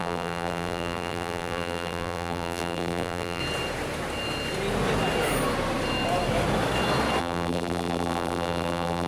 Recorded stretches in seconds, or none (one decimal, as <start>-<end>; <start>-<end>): 3.4-7.2

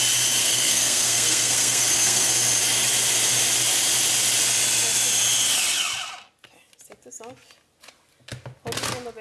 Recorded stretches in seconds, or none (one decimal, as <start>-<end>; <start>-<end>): 0.0-0.4; 2.3-9.2

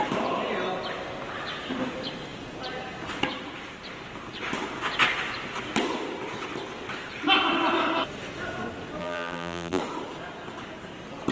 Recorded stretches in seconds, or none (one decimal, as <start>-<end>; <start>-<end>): 0.0-9.0; 9.8-11.3

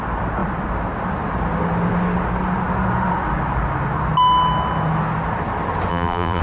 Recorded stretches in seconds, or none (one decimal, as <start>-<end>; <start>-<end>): 0.0-5.9

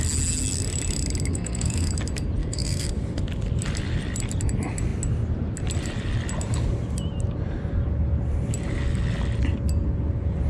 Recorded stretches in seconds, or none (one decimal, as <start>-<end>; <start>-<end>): 0.0-1.3; 1.9-2.4; 2.9-10.5